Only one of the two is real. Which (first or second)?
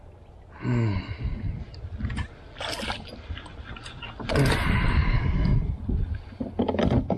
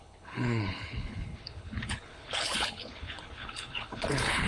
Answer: first